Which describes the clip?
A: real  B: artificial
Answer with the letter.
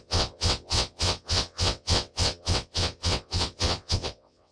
B